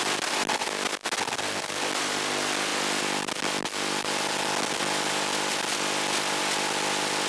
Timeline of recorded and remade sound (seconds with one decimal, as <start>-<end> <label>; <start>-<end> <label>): 0.0-7.3 recorded